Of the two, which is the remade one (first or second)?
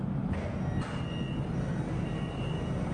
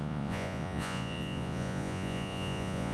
second